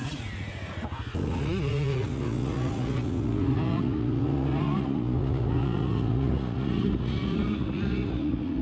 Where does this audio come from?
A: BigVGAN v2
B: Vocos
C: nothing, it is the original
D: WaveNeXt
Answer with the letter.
B